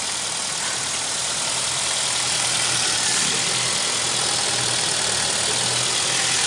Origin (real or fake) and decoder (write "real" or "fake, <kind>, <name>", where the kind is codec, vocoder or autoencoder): real